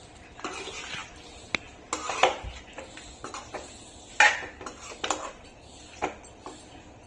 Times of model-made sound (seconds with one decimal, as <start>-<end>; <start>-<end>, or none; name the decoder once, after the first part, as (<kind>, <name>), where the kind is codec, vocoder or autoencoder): none